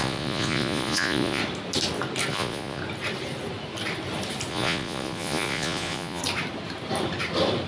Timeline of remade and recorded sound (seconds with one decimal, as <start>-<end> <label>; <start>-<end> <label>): 0.0-1.4 remade; 1.4-2.3 recorded; 2.3-2.8 remade; 2.8-4.5 recorded; 4.5-6.2 remade; 6.2-7.7 recorded